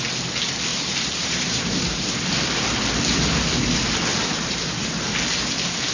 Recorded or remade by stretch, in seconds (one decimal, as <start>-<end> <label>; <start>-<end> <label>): 0.0-0.7 recorded; 0.7-2.3 remade; 2.3-4.1 recorded; 4.1-4.8 remade; 4.8-5.9 recorded

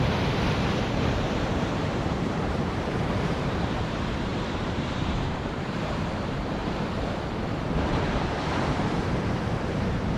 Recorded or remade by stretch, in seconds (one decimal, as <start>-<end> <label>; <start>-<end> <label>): 0.0-6.6 remade; 6.6-7.6 recorded; 7.6-10.2 remade

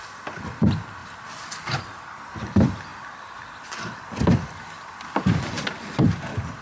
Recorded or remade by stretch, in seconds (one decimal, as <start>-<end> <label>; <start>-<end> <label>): 0.0-1.0 recorded; 1.0-1.8 remade; 1.8-2.9 recorded; 2.9-5.8 remade; 5.8-6.6 recorded

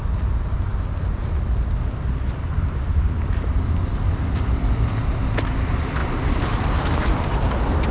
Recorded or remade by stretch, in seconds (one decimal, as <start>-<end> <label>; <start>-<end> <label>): 0.0-0.7 recorded; 0.7-4.9 remade; 4.9-6.0 recorded; 6.0-7.2 remade; 7.2-7.9 recorded